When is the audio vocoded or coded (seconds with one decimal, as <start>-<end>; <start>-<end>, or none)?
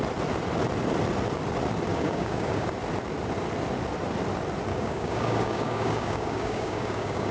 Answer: 1.9-2.7; 4.7-7.3